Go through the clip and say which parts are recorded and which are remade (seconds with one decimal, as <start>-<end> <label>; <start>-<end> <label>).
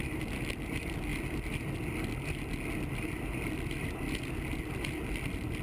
0.0-5.6 recorded